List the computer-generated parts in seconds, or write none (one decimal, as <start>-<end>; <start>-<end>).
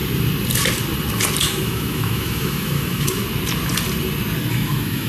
1.4-3.2; 4.5-5.1